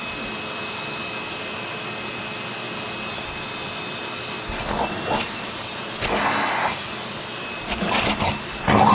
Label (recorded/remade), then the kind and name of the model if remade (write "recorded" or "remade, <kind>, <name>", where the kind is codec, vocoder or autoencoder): recorded